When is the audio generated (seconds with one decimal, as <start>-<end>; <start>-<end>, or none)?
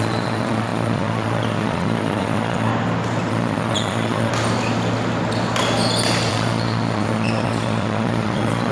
0.0-2.7; 3.3-4.3; 6.3-8.7